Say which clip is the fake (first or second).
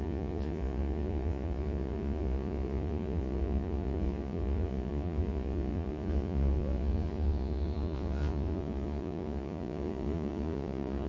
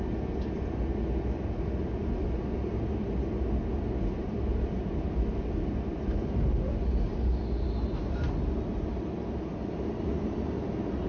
first